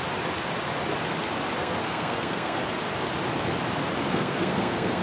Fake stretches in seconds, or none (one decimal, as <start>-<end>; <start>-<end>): 1.6-2.6; 4.0-5.0